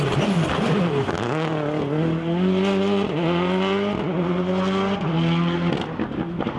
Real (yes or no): yes